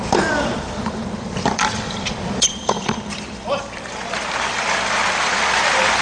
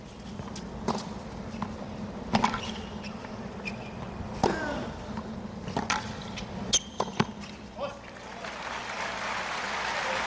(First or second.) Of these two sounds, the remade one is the first